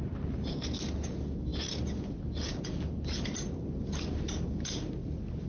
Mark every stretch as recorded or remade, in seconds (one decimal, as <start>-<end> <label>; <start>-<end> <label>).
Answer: 0.0-5.5 recorded